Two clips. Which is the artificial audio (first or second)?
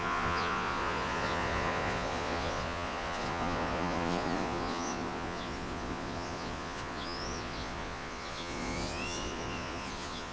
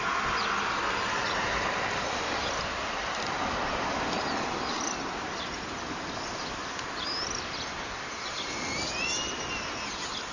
first